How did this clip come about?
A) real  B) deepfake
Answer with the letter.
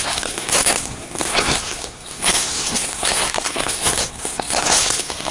B